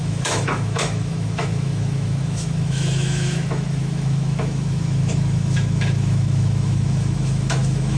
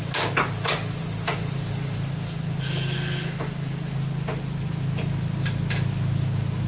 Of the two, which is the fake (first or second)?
first